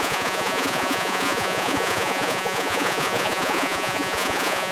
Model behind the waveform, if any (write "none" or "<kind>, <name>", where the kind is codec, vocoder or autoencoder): vocoder, Vocos